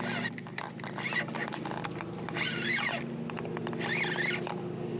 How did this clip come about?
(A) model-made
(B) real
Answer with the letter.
B